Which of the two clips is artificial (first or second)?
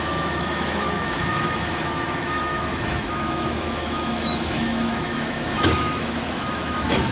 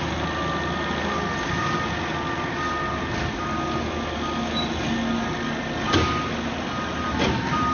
first